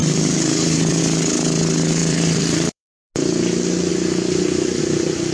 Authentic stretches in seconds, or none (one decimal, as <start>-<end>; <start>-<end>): 1.0-2.0; 3.1-5.3